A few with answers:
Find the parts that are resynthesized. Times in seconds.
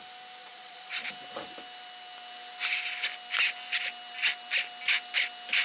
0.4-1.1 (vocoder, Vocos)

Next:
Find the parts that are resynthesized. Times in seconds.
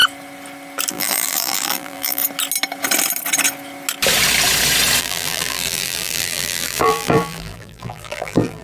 0.9-2.2 (vocoder, BigVGAN v2); 5.0-8.6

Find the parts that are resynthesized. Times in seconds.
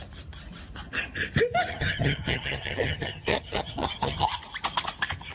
1.7-4.4 (vocoder, HiFi-GAN)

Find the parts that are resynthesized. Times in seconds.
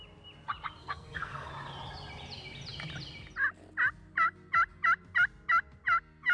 0.8-1.5 (codec, SNAC)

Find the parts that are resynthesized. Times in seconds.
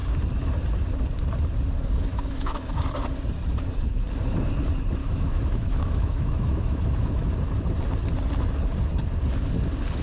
2.1-2.7 (autoencoder, DAC-VAE); 5.0-7.1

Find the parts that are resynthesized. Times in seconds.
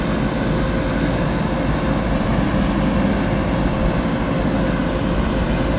none